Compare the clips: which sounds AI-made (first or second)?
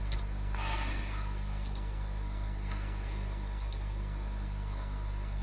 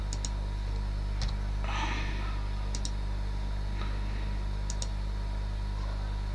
first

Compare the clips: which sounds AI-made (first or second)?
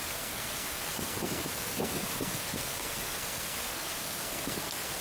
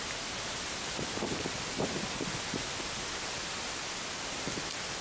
first